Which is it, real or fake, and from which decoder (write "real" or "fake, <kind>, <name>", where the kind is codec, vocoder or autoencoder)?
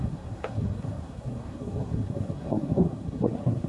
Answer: fake, codec, SNAC